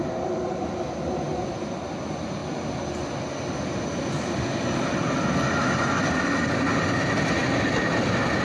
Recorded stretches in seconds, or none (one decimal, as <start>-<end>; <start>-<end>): 0.0-8.4